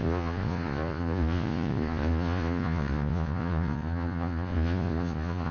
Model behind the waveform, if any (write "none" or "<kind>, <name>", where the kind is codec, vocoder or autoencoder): vocoder, Vocos